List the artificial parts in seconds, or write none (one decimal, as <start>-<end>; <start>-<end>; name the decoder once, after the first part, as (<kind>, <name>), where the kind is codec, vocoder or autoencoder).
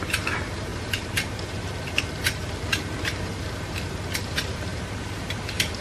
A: 0.0-5.8 (vocoder, BigVGAN v2)